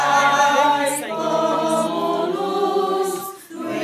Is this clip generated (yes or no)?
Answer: no